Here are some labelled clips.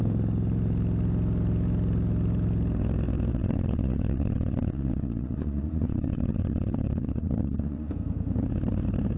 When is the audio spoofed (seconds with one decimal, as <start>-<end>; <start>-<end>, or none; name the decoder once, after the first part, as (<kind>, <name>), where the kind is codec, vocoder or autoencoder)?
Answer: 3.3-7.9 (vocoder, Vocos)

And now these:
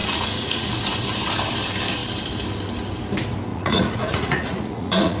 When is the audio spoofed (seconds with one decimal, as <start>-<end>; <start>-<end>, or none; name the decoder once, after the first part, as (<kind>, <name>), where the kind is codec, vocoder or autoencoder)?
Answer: 0.0-0.7 (vocoder, Vocos); 3.5-5.2

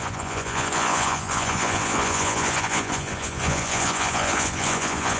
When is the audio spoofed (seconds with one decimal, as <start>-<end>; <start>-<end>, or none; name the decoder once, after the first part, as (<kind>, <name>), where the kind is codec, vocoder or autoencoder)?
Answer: 0.0-5.2 (vocoder, Vocos)